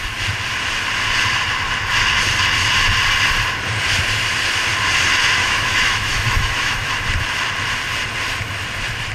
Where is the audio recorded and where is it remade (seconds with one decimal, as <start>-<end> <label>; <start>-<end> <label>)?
0.0-5.4 recorded; 5.4-6.9 remade; 6.9-9.1 recorded